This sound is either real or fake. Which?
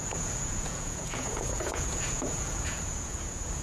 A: fake